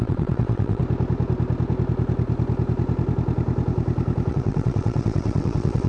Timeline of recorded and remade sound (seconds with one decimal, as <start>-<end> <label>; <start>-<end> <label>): 0.0-0.8 remade; 0.8-4.3 recorded; 4.3-5.9 remade